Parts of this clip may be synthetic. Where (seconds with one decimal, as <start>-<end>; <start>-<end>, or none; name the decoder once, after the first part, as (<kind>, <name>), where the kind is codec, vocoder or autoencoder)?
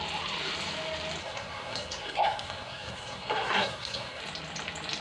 1.2-4.2 (codec, SNAC)